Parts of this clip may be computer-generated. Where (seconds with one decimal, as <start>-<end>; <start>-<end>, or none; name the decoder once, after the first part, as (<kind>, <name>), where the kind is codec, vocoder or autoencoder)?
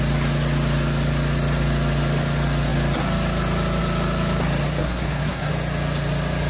4.8-5.5 (codec, SNAC)